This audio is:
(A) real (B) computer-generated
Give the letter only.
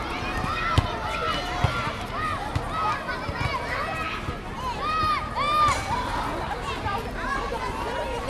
A